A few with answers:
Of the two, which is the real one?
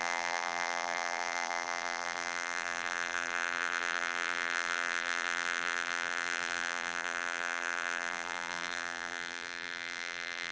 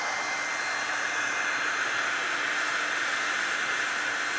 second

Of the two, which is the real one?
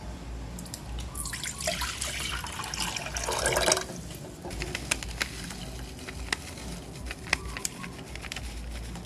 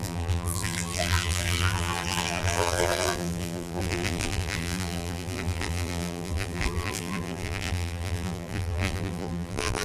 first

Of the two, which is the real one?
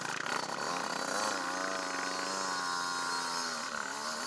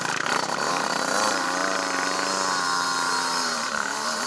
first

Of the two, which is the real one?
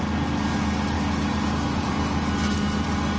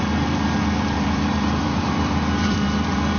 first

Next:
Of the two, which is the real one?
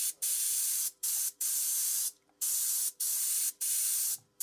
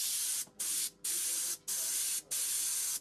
second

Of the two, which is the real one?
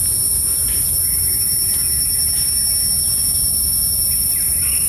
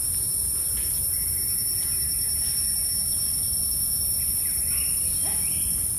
first